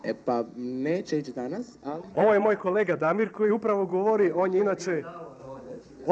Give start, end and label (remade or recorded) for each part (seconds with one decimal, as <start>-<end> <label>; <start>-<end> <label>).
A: 0.0-1.6 recorded; 1.6-3.5 remade; 3.5-5.4 recorded; 5.4-6.1 remade